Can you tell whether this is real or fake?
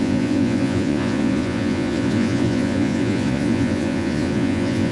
fake